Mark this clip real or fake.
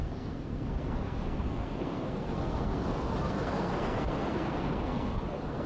fake